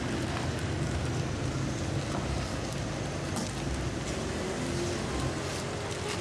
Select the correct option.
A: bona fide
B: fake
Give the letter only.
A